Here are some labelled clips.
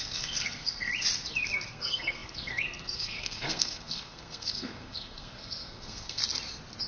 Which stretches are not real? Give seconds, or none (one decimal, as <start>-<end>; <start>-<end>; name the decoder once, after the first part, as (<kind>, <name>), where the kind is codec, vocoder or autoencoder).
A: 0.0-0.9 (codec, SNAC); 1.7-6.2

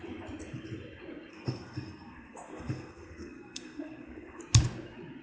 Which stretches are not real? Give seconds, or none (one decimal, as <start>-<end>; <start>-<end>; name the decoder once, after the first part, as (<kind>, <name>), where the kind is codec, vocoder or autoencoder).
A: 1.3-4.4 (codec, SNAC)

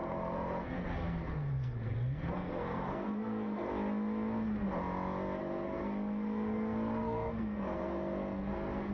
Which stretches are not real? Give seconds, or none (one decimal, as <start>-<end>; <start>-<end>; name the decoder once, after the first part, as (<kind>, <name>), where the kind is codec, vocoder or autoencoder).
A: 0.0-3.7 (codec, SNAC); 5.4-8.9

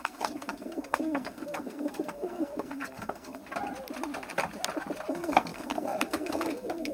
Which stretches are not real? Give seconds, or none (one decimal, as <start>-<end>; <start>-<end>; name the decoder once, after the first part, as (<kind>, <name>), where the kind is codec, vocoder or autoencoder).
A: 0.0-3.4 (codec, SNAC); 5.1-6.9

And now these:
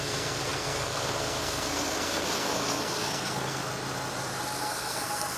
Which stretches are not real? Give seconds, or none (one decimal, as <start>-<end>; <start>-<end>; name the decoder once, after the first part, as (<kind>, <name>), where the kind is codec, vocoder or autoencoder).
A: 0.0-3.7 (codec, SNAC); 4.6-5.4

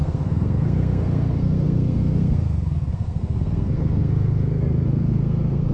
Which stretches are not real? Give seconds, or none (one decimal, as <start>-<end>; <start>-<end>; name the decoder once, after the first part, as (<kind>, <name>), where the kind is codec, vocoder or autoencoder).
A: 0.0-5.7 (codec, SNAC)

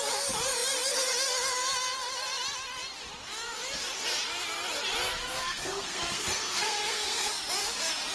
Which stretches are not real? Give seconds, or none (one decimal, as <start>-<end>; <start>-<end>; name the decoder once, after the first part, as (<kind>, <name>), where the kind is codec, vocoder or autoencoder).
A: 5.2-7.3 (codec, SNAC)